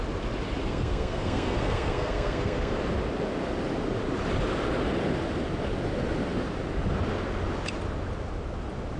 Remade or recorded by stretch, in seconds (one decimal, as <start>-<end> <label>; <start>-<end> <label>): 0.0-0.7 recorded; 0.7-2.8 remade; 2.8-9.0 recorded